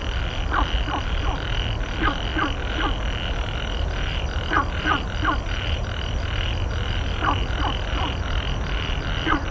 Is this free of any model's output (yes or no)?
yes